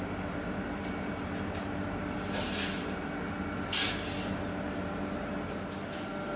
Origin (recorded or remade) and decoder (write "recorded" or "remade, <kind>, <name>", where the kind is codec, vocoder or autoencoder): recorded